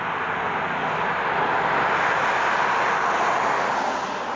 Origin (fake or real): real